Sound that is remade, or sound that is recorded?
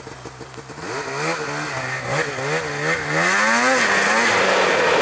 recorded